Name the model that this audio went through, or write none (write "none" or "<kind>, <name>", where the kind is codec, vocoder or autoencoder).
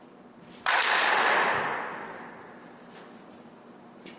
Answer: none